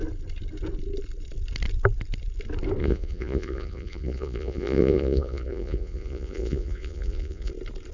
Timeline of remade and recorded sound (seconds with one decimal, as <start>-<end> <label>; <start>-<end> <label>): 0.0-2.8 recorded; 2.8-7.5 remade; 7.5-7.9 recorded